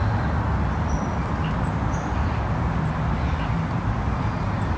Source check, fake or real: real